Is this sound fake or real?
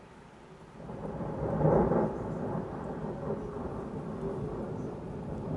real